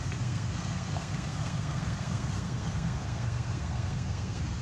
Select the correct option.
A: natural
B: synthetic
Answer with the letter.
B